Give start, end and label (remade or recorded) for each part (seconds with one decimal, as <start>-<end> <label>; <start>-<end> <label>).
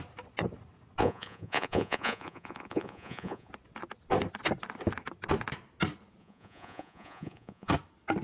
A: 0.0-1.0 recorded; 1.0-3.5 remade; 3.5-6.2 recorded; 6.2-7.7 remade; 7.7-8.2 recorded